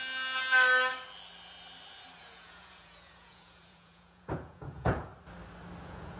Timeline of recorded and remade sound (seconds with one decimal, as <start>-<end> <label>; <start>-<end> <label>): 0.0-2.2 recorded; 2.2-5.1 remade; 5.1-5.8 recorded; 5.8-6.2 remade